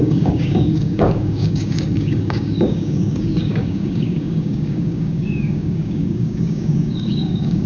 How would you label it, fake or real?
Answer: fake